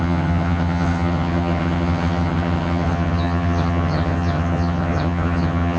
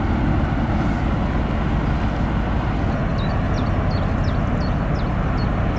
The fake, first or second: first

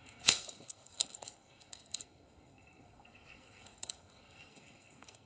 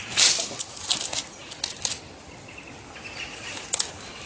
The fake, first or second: first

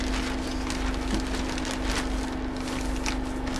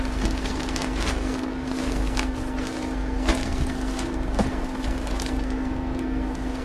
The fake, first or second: second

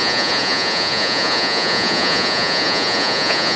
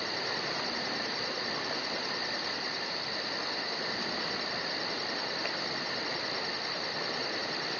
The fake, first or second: first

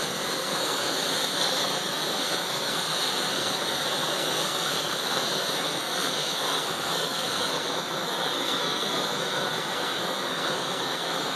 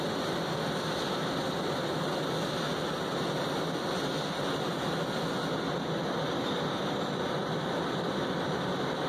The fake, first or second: first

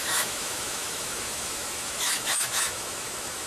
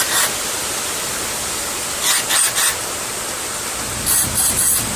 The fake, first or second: first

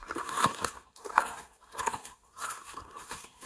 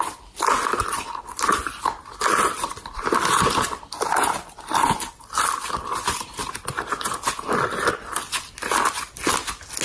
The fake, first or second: first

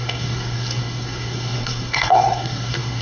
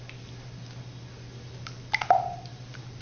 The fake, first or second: first